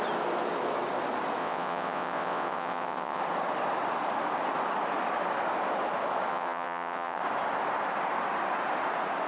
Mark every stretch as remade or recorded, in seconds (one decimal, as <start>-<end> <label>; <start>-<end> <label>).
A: 0.0-1.4 recorded; 1.4-3.2 remade; 3.2-6.3 recorded; 6.3-7.2 remade; 7.2-9.3 recorded